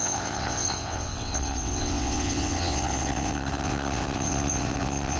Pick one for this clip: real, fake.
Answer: fake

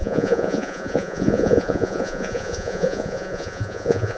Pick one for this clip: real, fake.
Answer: fake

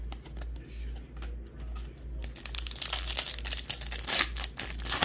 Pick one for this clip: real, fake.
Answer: real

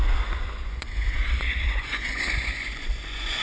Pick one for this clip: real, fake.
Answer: fake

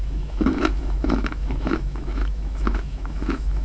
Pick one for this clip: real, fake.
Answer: fake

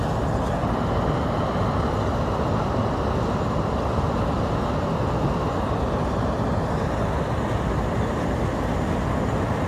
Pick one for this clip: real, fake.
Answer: real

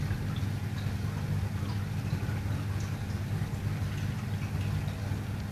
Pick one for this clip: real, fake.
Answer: real